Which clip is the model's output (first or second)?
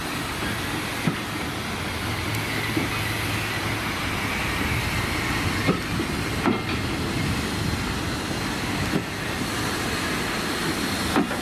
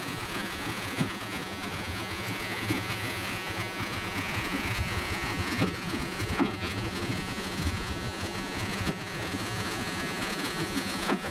second